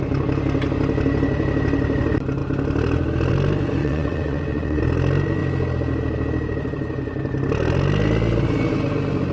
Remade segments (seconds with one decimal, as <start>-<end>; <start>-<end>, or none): 3.8-4.8